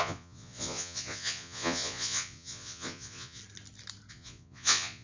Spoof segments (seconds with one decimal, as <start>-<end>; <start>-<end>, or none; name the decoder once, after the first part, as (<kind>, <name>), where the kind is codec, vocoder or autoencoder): 0.0-3.4 (vocoder, Vocos); 4.1-5.0